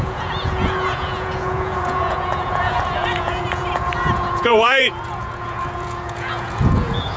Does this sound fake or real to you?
fake